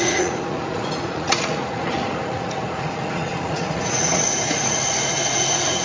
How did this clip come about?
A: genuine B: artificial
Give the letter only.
B